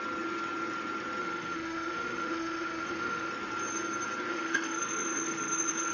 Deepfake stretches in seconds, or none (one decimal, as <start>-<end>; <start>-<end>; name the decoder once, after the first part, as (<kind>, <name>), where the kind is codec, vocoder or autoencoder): 1.2-3.3 (autoencoder, DAC-VAE); 4.3-5.9